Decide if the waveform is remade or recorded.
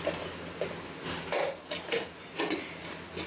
recorded